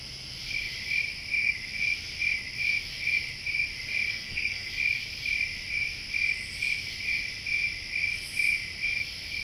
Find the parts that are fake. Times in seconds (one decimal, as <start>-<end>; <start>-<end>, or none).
4.1-4.7

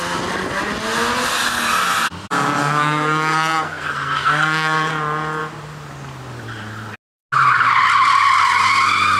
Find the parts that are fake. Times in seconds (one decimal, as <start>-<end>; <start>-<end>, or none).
2.6-4.9

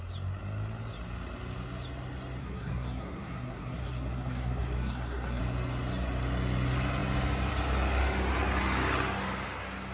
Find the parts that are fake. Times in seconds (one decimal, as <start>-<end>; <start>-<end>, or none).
2.4-5.4

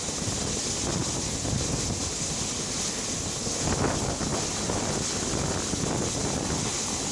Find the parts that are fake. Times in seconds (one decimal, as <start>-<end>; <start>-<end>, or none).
none

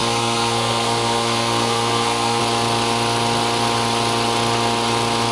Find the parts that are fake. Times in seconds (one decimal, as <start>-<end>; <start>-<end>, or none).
0.0-2.4

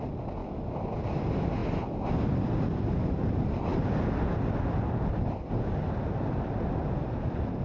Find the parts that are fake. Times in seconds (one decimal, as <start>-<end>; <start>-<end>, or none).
none

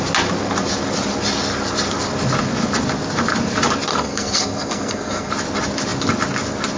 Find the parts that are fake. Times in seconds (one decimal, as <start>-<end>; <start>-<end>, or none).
3.9-5.3

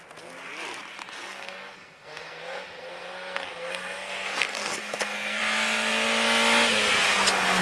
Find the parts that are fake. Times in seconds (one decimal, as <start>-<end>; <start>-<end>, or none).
1.2-5.4